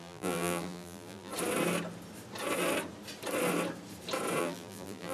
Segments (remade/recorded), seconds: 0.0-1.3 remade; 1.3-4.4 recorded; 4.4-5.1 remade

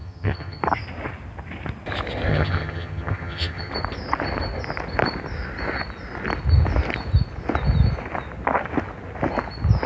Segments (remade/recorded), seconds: 0.0-0.6 remade; 0.6-2.3 recorded; 2.3-3.7 remade; 3.7-9.9 recorded

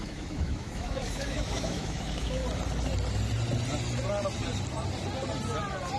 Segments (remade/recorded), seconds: 0.0-2.4 remade; 2.4-6.0 recorded

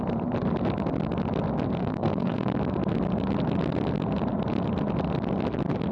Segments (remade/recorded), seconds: 0.0-1.8 recorded; 1.8-2.6 remade; 2.6-5.9 recorded

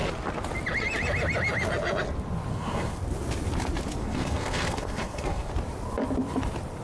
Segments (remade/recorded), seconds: 0.0-2.5 recorded; 2.5-3.0 remade; 3.0-4.0 recorded; 4.0-5.5 remade; 5.5-6.8 recorded

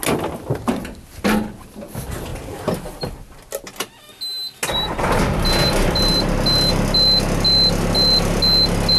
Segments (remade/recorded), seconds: 0.0-9.0 recorded

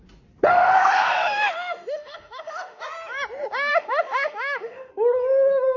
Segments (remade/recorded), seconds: 0.0-0.5 recorded; 0.5-2.8 remade; 2.8-3.7 recorded; 3.7-4.9 remade; 4.9-5.8 recorded

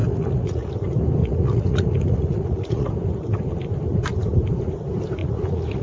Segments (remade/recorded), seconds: 0.0-0.7 remade; 0.7-1.2 recorded; 1.2-2.9 remade; 2.9-5.2 recorded; 5.2-5.8 remade